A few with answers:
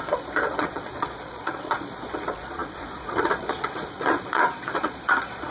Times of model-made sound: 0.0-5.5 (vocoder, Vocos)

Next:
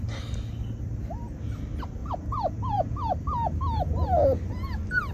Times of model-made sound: 2.0-3.1 (vocoder, Vocos)

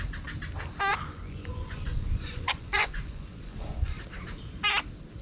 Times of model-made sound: 0.9-4.0 (vocoder, Vocos)

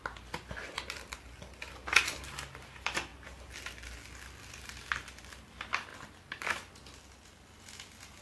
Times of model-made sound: none